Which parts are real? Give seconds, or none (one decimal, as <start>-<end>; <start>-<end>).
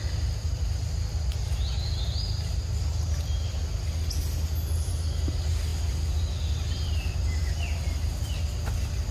0.0-9.1